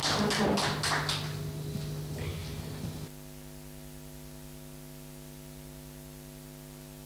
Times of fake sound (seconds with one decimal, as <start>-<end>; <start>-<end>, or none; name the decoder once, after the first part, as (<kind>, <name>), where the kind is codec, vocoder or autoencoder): none